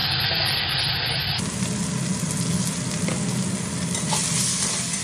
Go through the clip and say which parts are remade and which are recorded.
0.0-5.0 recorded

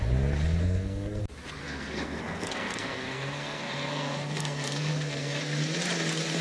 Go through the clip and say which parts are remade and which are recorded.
0.0-0.6 recorded; 0.6-1.2 remade; 1.2-1.6 recorded; 1.6-5.4 remade; 5.4-6.4 recorded

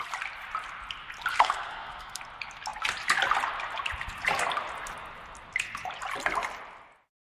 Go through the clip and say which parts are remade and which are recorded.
0.0-1.3 recorded; 1.3-2.2 remade; 2.2-7.4 recorded

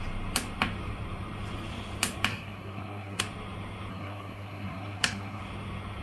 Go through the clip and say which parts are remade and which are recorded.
0.0-2.3 recorded; 2.3-3.2 remade; 3.2-3.9 recorded; 3.9-5.4 remade; 5.4-6.0 recorded

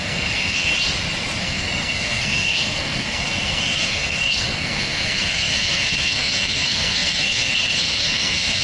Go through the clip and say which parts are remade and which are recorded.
0.0-0.7 remade; 0.7-1.4 recorded; 1.4-8.6 remade

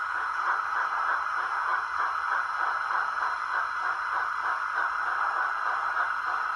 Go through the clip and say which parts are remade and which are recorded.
0.0-6.6 recorded